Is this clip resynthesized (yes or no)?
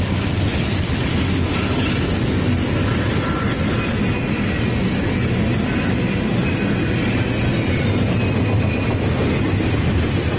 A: no